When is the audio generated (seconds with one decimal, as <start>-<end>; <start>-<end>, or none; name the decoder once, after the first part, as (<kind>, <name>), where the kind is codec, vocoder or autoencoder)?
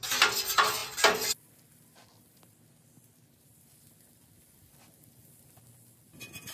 none